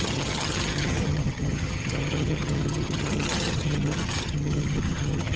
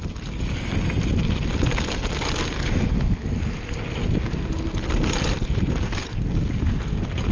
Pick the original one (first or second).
second